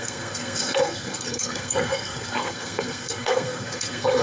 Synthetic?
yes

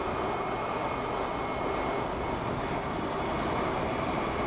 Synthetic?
no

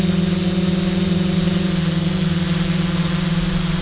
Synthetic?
no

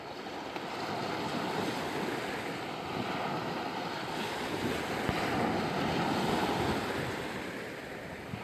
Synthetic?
no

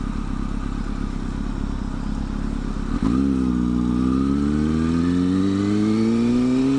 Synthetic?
no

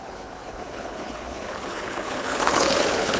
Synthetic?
yes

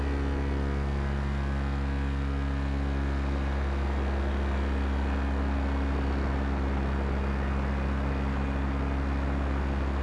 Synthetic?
no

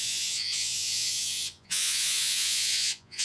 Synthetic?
yes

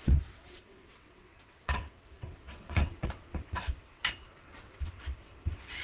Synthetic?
yes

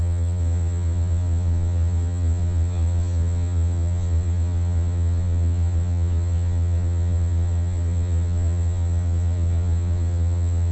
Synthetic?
yes